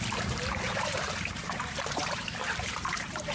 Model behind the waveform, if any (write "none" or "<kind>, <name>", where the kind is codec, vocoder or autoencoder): vocoder, BigVGAN v2